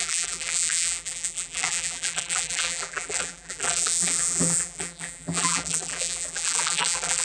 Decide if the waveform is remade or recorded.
remade